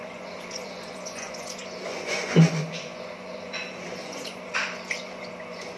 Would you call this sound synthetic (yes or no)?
yes